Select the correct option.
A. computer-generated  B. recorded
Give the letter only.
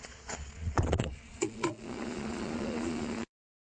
A